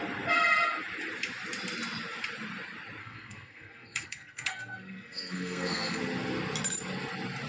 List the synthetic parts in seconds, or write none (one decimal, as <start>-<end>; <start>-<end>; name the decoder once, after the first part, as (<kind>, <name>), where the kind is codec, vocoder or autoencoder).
3.0-6.0 (codec, SNAC)

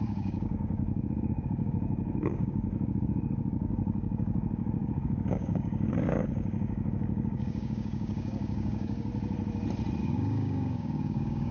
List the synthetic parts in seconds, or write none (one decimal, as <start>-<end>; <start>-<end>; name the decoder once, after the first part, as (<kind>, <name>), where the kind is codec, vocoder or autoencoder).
0.0-9.1 (codec, DAC); 10.0-11.5

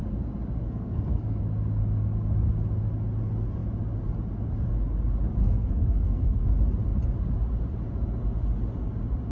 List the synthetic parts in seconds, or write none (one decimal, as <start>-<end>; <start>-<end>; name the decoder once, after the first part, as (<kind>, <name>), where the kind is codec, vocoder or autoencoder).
0.6-1.4 (codec, SNAC); 5.4-6.5

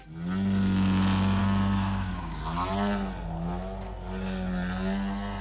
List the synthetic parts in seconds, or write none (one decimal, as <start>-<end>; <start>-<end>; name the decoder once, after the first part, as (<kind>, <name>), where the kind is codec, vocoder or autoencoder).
1.4-2.4 (codec, DAC)